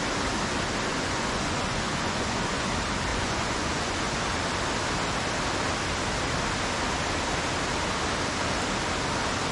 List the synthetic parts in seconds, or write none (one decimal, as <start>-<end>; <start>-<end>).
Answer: 0.9-2.7; 3.1-4.2